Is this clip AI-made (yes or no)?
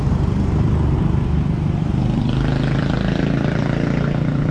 yes